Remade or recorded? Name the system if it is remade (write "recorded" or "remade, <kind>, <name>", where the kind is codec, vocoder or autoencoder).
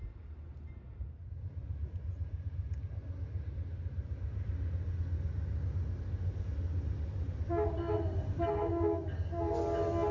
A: recorded